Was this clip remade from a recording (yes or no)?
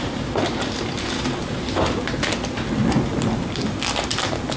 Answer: no